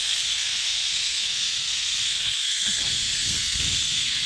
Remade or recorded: remade